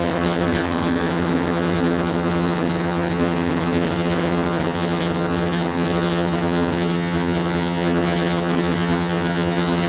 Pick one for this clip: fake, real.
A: fake